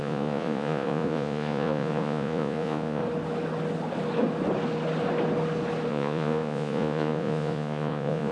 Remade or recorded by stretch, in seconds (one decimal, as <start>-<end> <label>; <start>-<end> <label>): 0.0-3.0 remade; 3.0-5.9 recorded; 5.9-8.3 remade